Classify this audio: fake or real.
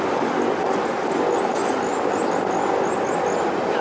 real